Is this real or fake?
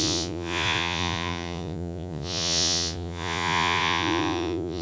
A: fake